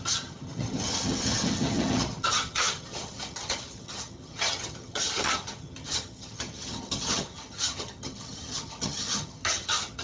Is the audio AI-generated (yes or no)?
yes